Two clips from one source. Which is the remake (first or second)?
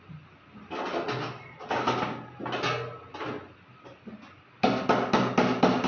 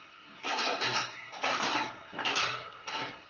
second